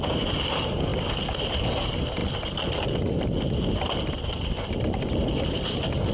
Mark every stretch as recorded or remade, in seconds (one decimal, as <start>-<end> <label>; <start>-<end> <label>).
0.0-6.1 recorded